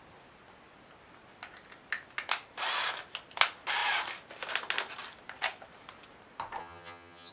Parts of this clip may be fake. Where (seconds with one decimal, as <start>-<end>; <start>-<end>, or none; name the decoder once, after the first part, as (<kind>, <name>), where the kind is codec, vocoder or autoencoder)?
6.6-7.3 (vocoder, HiFi-GAN)